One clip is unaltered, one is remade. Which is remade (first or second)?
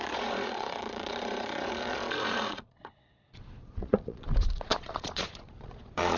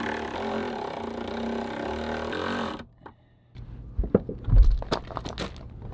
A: first